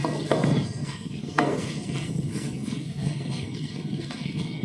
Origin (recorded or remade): remade